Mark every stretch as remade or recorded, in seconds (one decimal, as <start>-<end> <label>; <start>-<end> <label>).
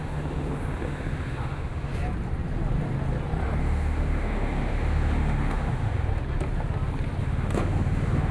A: 0.0-1.9 remade; 1.9-3.6 recorded; 3.6-6.1 remade; 6.1-7.2 recorded; 7.2-8.3 remade